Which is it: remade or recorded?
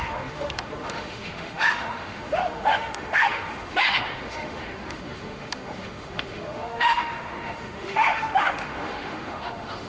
remade